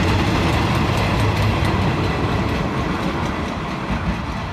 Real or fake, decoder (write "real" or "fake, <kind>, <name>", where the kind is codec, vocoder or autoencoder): real